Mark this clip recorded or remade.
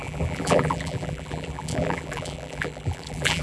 remade